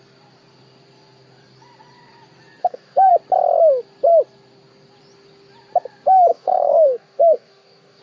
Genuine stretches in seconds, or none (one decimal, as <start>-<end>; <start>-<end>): 0.0-2.6; 3.1-6.3